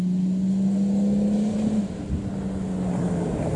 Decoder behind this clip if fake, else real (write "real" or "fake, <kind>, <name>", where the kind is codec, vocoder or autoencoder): real